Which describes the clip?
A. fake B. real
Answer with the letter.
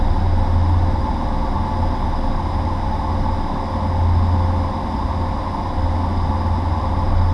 B